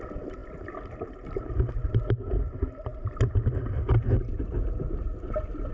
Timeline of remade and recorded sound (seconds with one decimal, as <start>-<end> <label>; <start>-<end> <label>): 0.0-5.7 recorded